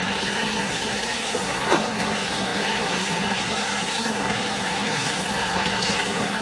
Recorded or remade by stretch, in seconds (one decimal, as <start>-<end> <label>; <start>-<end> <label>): 0.0-6.4 remade